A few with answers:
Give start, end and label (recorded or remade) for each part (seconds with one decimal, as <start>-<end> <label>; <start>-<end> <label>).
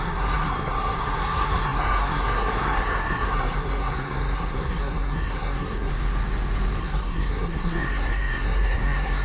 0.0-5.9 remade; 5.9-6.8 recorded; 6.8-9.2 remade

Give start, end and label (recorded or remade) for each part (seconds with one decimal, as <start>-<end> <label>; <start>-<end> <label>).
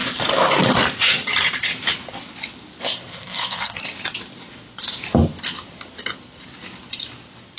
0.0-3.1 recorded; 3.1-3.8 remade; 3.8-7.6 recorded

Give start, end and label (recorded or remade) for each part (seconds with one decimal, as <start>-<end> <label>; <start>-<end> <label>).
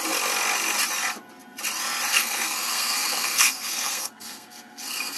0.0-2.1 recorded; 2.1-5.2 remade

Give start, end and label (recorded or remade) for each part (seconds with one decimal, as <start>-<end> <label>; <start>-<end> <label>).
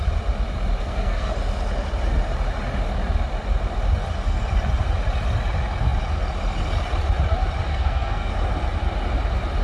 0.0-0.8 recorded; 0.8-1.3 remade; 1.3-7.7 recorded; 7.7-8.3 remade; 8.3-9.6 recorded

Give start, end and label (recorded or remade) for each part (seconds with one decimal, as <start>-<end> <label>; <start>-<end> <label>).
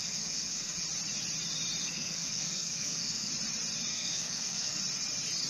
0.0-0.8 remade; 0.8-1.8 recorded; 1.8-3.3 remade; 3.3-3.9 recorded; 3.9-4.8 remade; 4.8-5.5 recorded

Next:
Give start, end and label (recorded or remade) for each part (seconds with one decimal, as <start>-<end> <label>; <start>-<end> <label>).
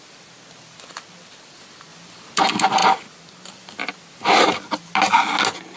0.0-5.8 recorded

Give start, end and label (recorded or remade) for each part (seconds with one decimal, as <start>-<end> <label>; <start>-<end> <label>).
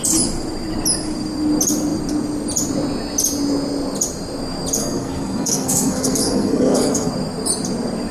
0.0-4.8 recorded; 4.8-7.1 remade; 7.1-8.1 recorded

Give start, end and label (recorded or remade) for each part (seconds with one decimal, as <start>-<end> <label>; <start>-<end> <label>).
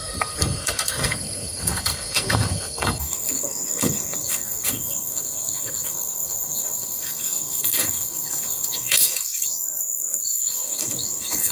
0.0-11.5 remade